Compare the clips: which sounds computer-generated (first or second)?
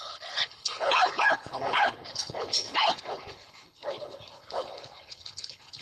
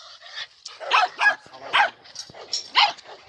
first